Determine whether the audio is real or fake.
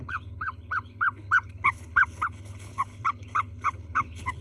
fake